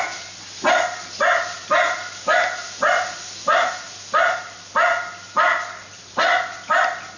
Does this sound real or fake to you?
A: real